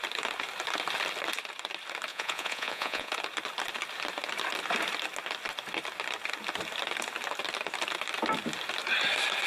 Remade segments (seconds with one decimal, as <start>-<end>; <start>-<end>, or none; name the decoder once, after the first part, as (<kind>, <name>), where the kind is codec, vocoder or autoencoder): 2.1-3.1 (vocoder, Vocos)